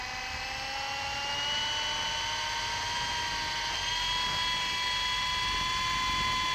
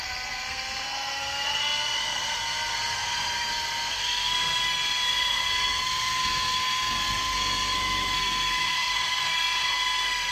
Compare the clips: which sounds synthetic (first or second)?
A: second